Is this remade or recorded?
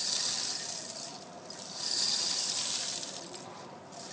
recorded